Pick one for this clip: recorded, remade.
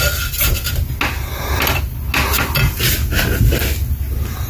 recorded